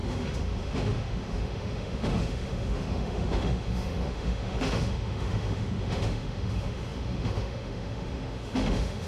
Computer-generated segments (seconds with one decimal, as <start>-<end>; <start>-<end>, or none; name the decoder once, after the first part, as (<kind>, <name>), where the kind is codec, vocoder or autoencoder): 0.0-9.1 (autoencoder, DAC-VAE)